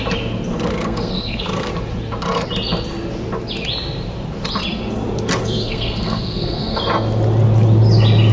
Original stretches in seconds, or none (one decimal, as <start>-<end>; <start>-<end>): 0.0-0.7; 1.7-5.4; 6.8-8.3